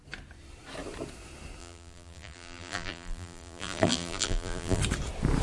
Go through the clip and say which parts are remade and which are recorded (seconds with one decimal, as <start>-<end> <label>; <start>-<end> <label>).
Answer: 0.0-1.6 recorded; 1.6-4.8 remade; 4.8-5.4 recorded